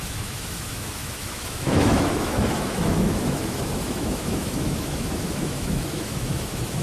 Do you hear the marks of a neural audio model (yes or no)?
yes